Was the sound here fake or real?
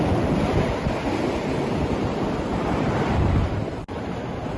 real